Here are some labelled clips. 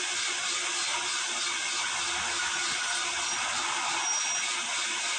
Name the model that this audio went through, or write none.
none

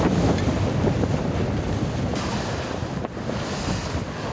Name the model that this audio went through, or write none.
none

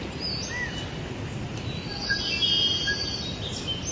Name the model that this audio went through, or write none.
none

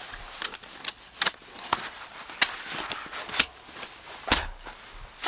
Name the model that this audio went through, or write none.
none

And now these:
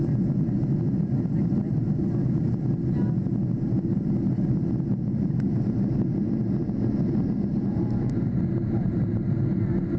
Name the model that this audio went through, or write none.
none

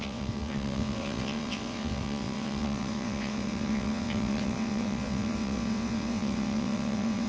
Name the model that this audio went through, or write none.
vocoder, WaveNeXt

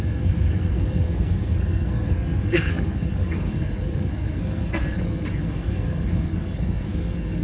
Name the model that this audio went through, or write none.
codec, SNAC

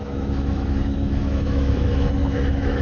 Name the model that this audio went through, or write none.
autoencoder, DAC-VAE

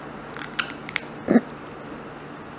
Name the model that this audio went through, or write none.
none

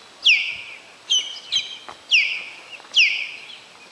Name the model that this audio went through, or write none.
none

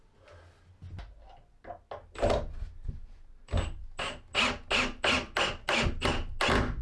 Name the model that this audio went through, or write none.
none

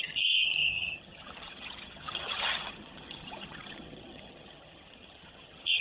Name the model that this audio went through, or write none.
vocoder, HiFi-GAN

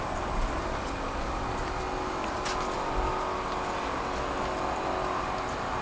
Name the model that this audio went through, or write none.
none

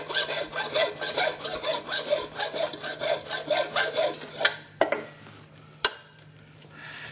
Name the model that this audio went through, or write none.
none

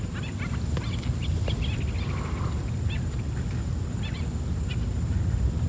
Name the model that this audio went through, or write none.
none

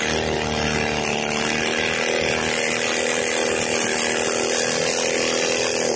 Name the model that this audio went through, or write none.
none